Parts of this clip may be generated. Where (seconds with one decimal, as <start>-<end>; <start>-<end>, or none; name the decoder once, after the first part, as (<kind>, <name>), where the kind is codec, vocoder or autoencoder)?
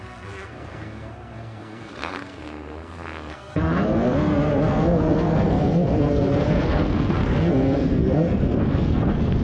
0.0-9.4 (codec, SNAC)